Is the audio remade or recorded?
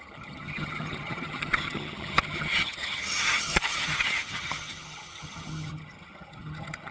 remade